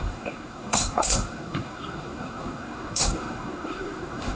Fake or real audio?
fake